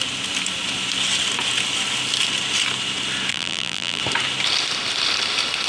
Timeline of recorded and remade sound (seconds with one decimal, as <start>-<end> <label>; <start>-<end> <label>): 0.0-3.3 recorded; 3.3-4.0 remade; 4.0-5.7 recorded